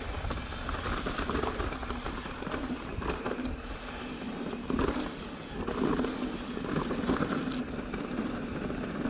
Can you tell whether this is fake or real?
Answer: real